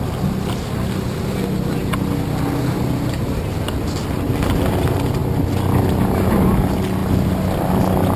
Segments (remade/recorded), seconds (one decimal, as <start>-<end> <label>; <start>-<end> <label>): 0.0-8.2 recorded